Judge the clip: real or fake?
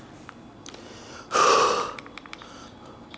real